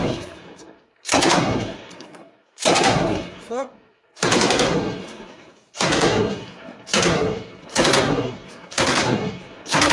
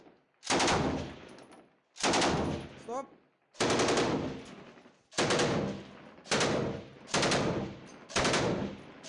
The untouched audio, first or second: second